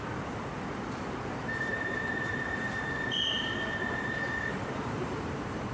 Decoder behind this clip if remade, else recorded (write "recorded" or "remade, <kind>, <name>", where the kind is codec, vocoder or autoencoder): remade, vocoder, BigVGAN v2